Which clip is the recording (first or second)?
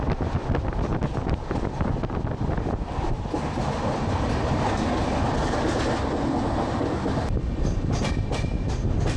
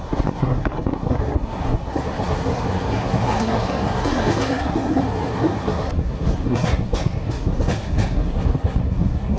first